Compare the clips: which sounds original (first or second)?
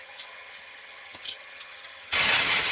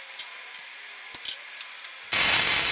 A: second